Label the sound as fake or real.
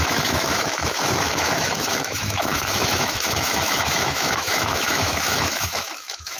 fake